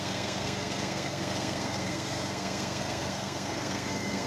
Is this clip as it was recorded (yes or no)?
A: no